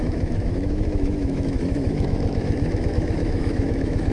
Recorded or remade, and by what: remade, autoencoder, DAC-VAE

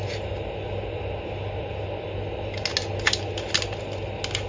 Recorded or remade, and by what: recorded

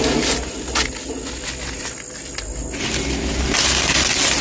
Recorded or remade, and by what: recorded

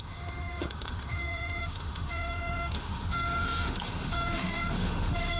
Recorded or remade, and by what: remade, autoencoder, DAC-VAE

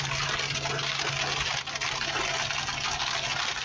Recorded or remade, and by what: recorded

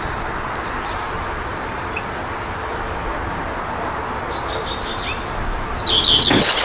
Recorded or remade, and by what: recorded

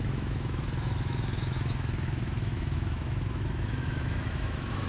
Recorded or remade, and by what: remade, autoencoder, DAC-VAE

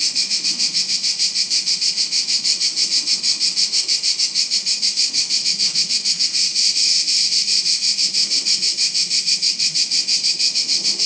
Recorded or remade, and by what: remade, autoencoder, DAC-VAE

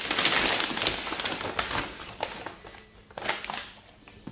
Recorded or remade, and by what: recorded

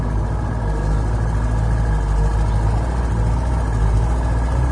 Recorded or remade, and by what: recorded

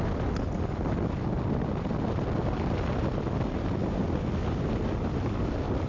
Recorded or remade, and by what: recorded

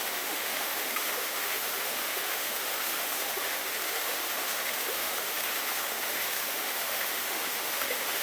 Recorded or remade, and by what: remade, autoencoder, DAC-VAE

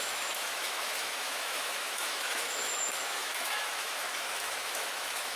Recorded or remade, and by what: remade, autoencoder, DAC-VAE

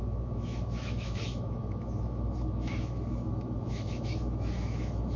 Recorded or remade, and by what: remade, autoencoder, DAC-VAE